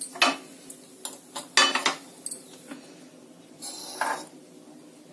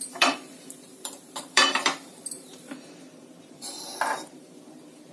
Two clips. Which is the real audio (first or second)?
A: first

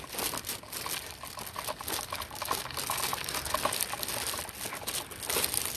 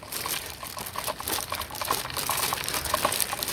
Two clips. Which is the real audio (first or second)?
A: first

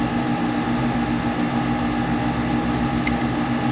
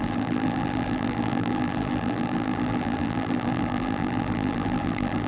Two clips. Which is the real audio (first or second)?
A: first